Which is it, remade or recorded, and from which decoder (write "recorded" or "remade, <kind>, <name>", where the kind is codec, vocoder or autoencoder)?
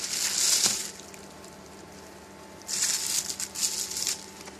recorded